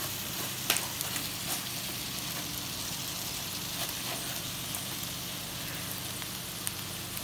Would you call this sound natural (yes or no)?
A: yes